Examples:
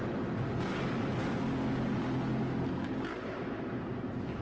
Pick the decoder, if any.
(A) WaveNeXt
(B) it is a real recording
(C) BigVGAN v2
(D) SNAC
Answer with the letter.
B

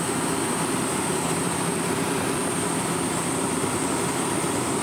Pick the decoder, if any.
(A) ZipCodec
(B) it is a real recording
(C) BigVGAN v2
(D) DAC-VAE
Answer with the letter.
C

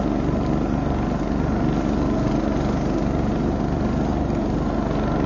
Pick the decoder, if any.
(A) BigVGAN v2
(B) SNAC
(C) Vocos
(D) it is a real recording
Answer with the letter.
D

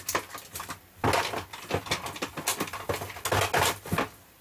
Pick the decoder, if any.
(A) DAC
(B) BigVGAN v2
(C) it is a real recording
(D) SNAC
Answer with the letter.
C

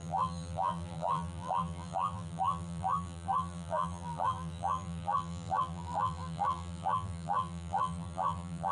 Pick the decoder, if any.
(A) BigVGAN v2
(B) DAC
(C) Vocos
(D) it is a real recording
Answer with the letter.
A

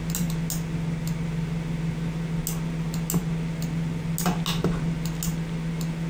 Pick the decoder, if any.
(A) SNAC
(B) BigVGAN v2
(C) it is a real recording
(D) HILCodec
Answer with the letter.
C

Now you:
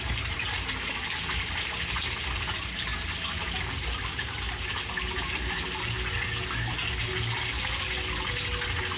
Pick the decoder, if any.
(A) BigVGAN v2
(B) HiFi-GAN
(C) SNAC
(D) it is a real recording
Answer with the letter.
D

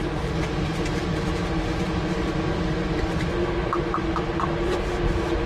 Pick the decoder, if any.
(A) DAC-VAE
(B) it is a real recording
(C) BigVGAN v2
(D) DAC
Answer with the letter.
B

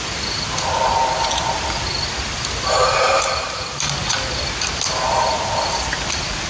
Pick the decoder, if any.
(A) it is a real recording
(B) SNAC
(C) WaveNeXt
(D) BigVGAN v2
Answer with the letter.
A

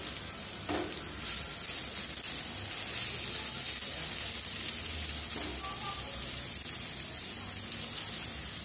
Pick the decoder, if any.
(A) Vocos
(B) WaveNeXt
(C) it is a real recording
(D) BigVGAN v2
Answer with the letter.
C